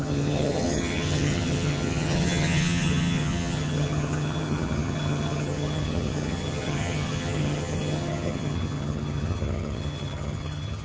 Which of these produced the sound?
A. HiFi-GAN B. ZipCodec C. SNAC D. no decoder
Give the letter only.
A